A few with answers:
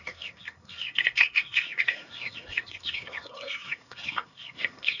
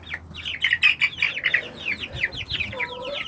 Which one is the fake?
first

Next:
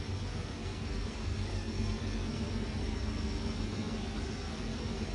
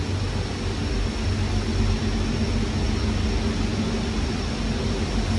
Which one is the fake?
first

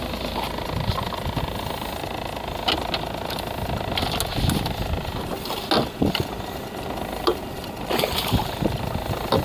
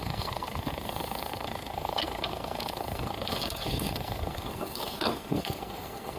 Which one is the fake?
second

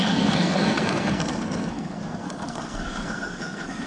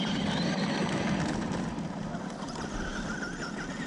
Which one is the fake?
first